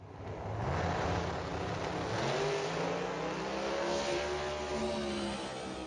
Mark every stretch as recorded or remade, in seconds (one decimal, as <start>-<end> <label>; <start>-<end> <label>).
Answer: 0.0-5.9 recorded